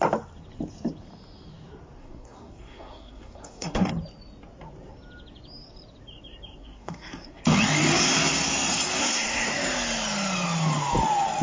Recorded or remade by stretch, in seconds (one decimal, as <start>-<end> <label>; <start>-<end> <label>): 0.0-2.0 recorded; 2.0-3.9 remade; 3.9-6.6 recorded; 6.6-7.4 remade; 7.4-9.0 recorded; 9.0-9.5 remade; 9.5-11.4 recorded